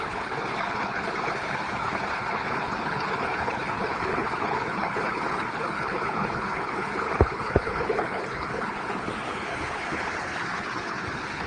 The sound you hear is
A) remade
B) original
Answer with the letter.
A